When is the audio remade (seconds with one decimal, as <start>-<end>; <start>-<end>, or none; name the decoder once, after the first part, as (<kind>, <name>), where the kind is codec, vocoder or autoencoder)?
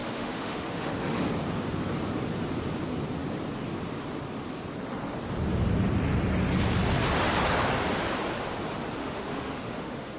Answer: 0.0-1.3 (autoencoder, DAC-VAE); 9.0-10.2